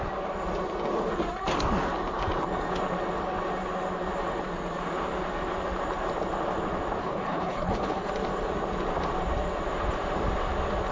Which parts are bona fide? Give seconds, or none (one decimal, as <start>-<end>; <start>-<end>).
0.0-7.0; 8.1-10.9